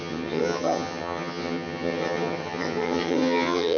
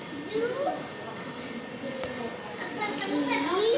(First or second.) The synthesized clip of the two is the first